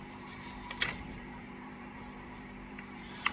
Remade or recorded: remade